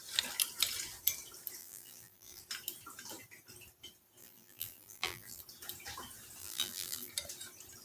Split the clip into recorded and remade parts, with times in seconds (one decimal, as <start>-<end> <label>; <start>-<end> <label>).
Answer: 0.0-1.6 recorded; 1.6-2.4 remade; 2.4-4.2 recorded; 4.2-5.4 remade; 5.4-6.4 recorded; 6.4-7.1 remade; 7.1-7.8 recorded